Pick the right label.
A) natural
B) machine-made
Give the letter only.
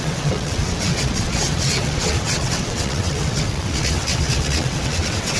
B